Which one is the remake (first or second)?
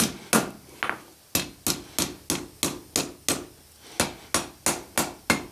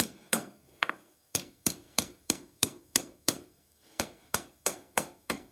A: second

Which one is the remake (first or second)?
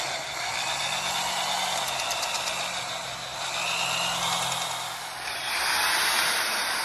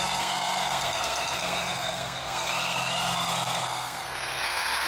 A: second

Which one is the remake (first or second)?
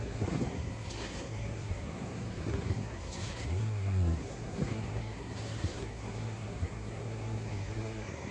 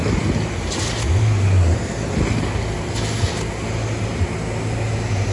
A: first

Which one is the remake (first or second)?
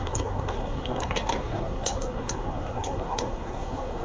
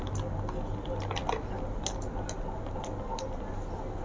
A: first